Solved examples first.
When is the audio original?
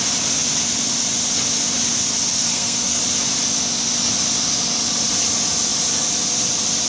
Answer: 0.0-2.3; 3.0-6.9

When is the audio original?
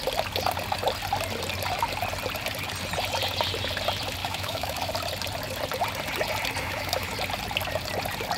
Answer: 0.0-4.2; 4.9-6.6; 7.1-8.4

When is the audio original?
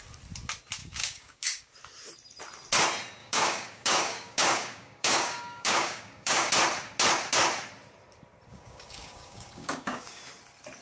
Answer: 0.0-0.8; 1.7-3.2; 6.5-8.5; 10.2-10.8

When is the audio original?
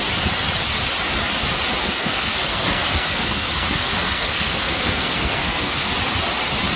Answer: 0.0-1.8; 5.9-6.8